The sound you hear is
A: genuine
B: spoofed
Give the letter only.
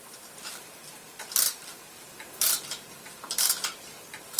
B